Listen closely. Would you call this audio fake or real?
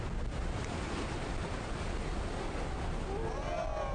real